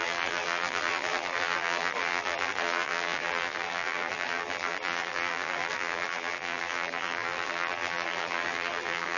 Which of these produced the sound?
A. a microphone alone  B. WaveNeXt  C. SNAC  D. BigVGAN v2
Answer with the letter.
D